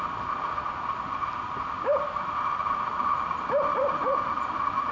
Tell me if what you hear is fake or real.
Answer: real